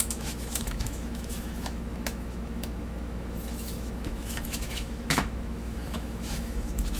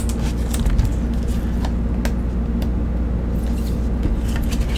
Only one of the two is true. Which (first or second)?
second